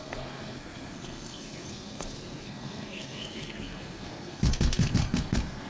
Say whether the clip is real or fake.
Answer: fake